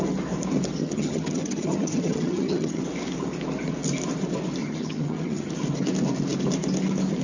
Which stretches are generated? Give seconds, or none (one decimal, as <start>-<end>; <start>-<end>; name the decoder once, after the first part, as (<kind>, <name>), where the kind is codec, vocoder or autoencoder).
0.8-2.8 (vocoder, HiFi-GAN); 4.6-5.5